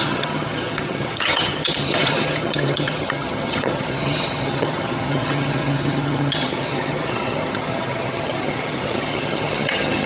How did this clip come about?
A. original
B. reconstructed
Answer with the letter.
B